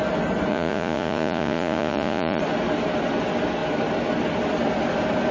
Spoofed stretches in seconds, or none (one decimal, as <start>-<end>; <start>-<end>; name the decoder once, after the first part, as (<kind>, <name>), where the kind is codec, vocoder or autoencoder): 0.5-2.4 (vocoder, Vocos)